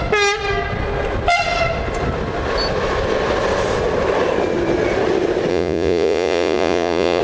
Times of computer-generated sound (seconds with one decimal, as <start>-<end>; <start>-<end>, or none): 5.5-7.2